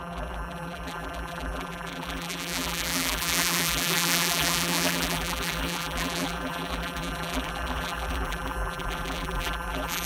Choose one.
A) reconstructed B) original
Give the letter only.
A